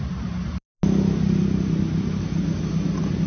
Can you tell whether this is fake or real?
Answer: real